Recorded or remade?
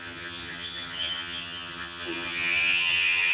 remade